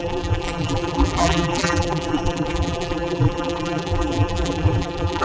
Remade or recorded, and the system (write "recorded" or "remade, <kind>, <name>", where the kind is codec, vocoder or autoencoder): remade, vocoder, BigVGAN v2